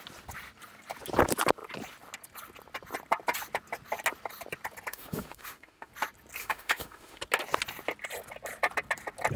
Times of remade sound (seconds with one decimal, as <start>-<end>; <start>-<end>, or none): 4.9-5.9; 6.4-7.2